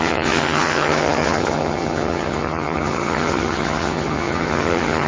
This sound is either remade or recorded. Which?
remade